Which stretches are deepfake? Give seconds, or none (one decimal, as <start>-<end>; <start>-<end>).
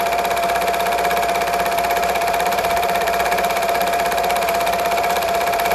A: 2.0-5.7